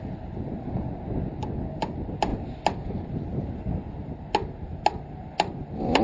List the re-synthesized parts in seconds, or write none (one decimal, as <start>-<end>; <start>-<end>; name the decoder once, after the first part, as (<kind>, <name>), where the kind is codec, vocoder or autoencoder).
none